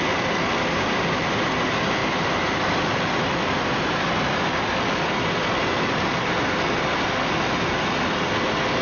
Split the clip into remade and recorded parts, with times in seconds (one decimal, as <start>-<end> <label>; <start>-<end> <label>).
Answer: 0.0-8.8 recorded